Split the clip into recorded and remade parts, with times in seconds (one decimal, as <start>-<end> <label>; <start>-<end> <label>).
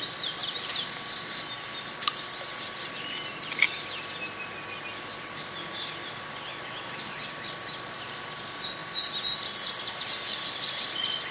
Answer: 0.0-11.3 recorded